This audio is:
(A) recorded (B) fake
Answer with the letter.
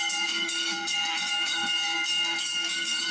B